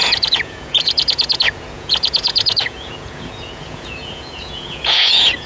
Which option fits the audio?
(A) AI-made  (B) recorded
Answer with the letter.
A